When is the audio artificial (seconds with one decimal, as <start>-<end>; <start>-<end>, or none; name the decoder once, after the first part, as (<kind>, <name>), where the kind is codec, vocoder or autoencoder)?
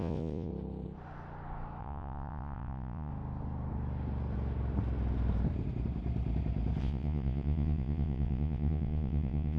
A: 0.0-0.5 (vocoder, Vocos); 1.8-3.1; 6.8-9.6